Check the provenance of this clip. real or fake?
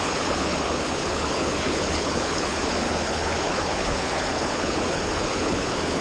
fake